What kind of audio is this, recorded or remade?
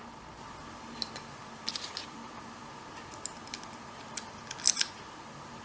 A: recorded